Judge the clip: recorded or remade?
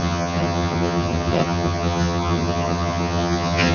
remade